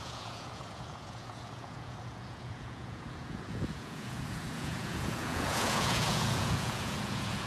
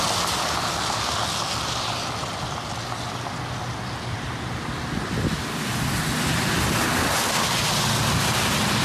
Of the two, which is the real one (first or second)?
second